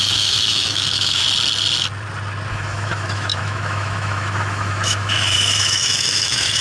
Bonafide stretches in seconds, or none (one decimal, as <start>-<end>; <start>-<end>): 1.2-2.5